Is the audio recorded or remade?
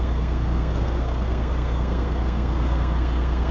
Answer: remade